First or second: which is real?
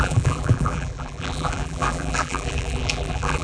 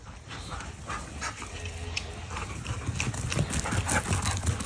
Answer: second